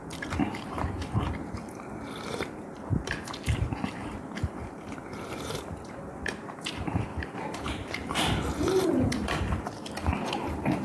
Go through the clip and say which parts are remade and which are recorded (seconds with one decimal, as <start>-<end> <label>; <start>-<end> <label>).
0.0-10.8 remade